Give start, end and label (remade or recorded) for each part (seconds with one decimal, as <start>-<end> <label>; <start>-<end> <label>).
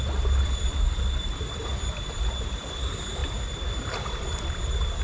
0.0-1.7 remade; 1.7-2.6 recorded; 2.6-3.2 remade; 3.2-3.9 recorded; 3.9-5.0 remade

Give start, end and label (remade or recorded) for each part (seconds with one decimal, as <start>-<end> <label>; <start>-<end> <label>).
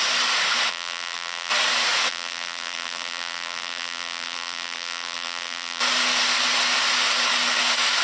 0.0-0.7 recorded; 0.7-1.5 remade; 1.5-2.1 recorded; 2.1-5.8 remade; 5.8-8.0 recorded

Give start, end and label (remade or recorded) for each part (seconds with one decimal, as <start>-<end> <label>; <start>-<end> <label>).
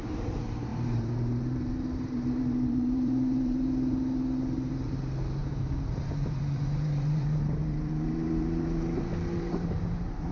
0.0-10.3 remade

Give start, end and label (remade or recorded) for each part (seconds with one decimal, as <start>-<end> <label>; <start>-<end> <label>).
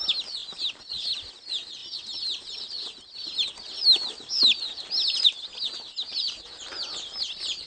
0.0-0.4 recorded; 0.4-1.3 remade; 1.3-1.8 recorded; 1.8-6.4 remade; 6.4-7.7 recorded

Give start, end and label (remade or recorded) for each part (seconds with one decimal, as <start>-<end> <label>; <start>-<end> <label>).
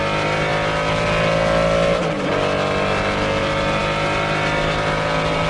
0.0-5.5 recorded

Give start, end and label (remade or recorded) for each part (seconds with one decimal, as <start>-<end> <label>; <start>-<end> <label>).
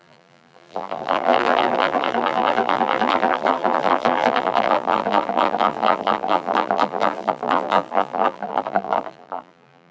0.0-9.9 remade